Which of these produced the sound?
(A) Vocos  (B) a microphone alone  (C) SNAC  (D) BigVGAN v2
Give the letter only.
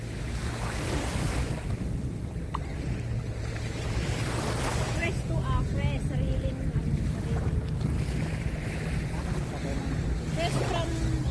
B